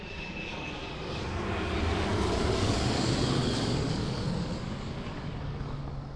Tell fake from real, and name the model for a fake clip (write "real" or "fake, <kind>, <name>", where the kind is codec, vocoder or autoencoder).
fake, codec, DAC